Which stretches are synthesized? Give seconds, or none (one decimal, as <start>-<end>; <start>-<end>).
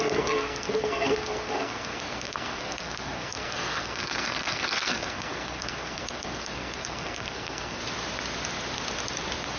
0.0-7.8